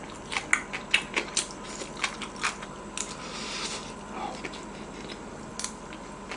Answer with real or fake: real